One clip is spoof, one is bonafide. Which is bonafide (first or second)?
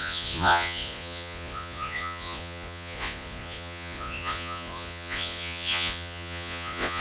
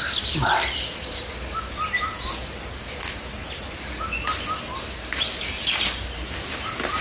second